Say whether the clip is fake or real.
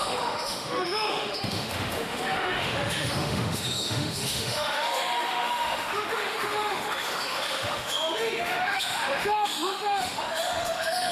fake